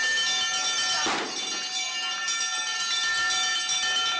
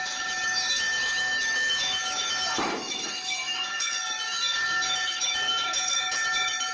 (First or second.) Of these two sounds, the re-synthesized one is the second